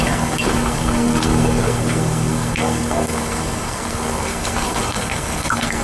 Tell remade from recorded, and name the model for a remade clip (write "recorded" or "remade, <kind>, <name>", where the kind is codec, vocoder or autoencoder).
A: remade, codec, SNAC